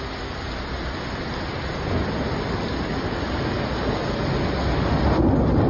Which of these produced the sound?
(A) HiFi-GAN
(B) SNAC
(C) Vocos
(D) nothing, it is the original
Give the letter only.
D